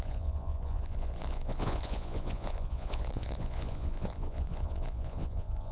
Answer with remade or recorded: remade